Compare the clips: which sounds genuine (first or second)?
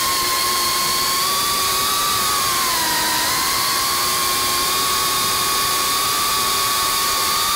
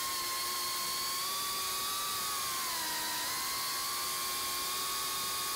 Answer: second